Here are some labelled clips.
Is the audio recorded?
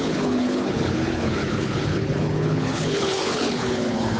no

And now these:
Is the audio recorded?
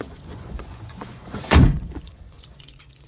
no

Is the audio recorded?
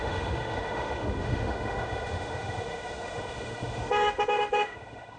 no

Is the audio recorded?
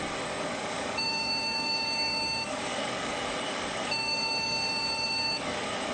no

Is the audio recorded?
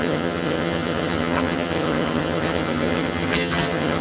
no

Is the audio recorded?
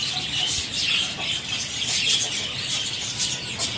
yes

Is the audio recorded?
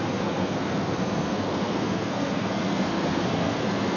no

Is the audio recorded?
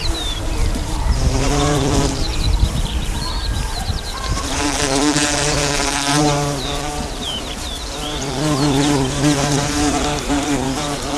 no